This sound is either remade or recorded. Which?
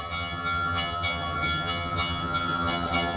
remade